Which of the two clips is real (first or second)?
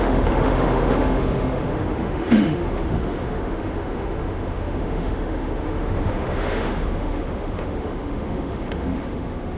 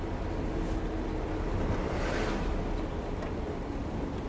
second